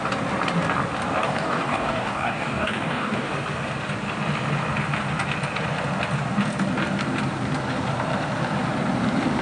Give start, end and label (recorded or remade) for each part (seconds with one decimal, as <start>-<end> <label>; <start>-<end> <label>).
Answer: 0.0-1.2 recorded; 1.2-3.3 remade; 3.3-9.4 recorded